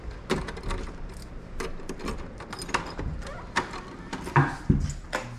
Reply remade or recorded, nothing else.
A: recorded